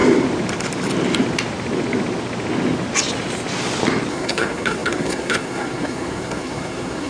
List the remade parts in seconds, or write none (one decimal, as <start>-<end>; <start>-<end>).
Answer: 4.1-7.1